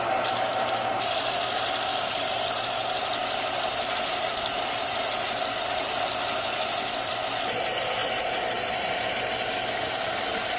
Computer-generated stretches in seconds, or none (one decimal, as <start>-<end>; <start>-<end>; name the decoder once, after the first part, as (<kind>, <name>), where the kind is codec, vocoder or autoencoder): 0.5-1.2 (vocoder, BigVGAN v2); 8.0-9.3